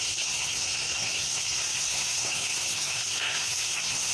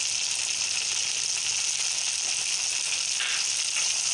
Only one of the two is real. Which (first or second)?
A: second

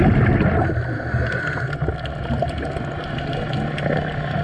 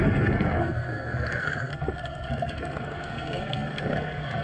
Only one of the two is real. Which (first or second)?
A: first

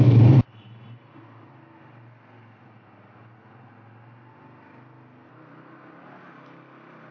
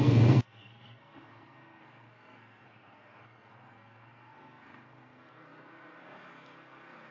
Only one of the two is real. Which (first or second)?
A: first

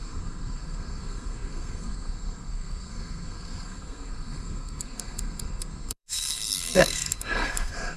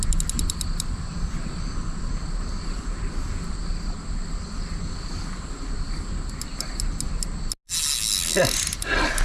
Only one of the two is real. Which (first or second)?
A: second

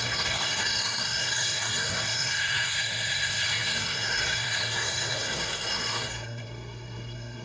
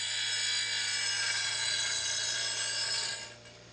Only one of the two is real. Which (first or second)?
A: second